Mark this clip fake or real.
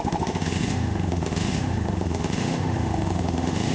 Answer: fake